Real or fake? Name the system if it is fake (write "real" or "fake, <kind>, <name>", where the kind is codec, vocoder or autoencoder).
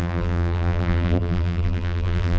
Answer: fake, vocoder, BigVGAN v2